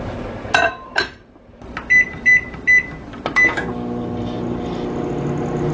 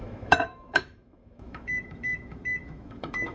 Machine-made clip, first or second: second